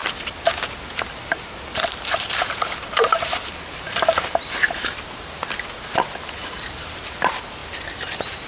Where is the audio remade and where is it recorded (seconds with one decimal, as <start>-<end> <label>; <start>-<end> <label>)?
0.0-0.5 remade; 0.5-1.2 recorded; 1.2-4.9 remade; 4.9-8.5 recorded